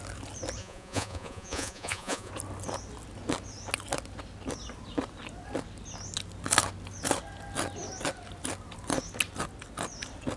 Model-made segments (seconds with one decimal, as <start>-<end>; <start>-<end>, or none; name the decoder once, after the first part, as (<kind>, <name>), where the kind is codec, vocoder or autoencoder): 0.6-2.3 (vocoder, Vocos)